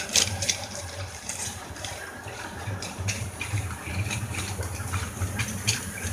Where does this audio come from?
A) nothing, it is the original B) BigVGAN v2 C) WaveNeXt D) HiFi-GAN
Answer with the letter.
B